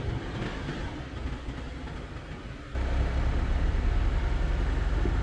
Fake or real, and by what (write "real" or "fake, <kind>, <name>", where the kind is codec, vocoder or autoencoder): real